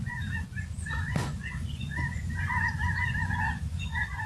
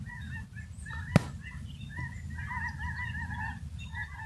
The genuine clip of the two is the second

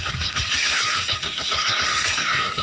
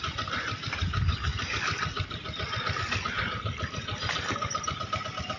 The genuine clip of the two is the second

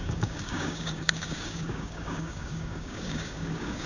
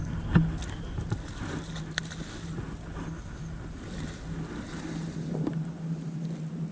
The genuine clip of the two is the second